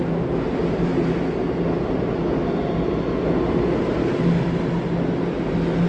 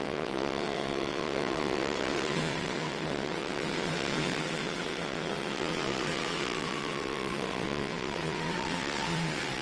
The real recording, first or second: first